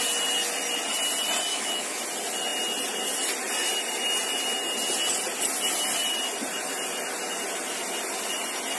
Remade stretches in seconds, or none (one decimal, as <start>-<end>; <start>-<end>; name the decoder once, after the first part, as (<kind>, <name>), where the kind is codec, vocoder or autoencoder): 1.5-2.0 (autoencoder, DAC-VAE)

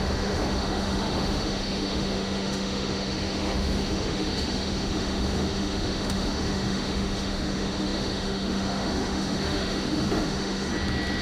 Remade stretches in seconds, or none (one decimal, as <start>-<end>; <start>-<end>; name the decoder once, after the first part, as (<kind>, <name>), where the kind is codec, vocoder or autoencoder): 0.0-10.7 (autoencoder, DAC-VAE)

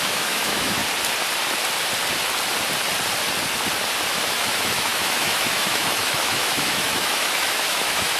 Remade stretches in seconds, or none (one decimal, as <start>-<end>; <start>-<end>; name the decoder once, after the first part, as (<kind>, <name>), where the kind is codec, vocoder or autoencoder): 0.0-0.8 (autoencoder, DAC-VAE); 4.3-8.2

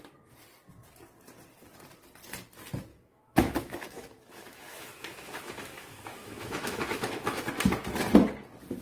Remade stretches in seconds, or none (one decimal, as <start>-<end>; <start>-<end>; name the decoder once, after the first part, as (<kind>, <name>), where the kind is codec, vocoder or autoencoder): 2.9-7.4 (autoencoder, DAC-VAE)

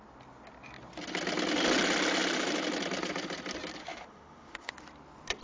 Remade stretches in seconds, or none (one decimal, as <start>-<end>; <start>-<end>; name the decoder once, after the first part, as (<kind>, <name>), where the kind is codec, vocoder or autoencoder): 3.8-4.7 (autoencoder, DAC-VAE)

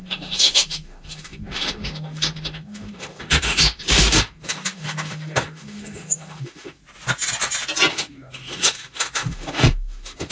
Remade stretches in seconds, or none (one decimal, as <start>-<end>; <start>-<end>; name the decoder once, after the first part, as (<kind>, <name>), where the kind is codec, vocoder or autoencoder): 0.0-6.8 (autoencoder, DAC-VAE); 7.9-10.3

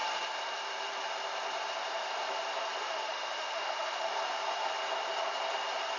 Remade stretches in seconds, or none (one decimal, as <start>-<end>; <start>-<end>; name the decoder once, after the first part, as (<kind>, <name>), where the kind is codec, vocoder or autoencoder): 2.8-4.1 (autoencoder, DAC-VAE)